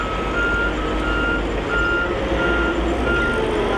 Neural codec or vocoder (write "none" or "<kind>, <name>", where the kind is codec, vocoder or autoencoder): none